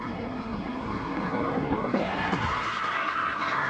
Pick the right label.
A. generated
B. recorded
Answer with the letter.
A